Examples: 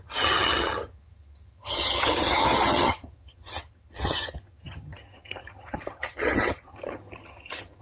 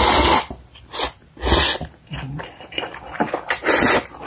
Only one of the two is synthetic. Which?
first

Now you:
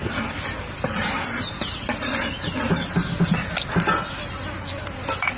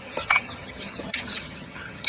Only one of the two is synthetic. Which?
second